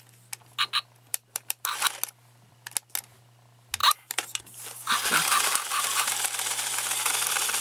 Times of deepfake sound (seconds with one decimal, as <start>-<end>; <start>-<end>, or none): 1.1-1.8; 3.8-7.1